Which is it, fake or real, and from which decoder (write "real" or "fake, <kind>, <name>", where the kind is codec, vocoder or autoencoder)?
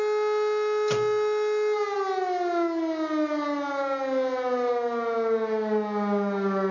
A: real